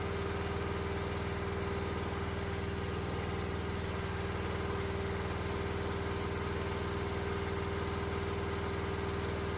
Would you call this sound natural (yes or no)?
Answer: yes